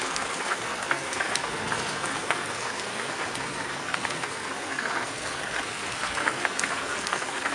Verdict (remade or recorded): remade